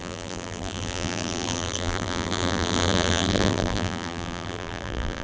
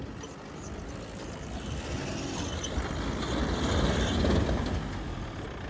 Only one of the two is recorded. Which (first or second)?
second